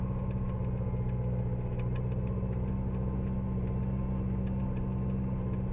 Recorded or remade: recorded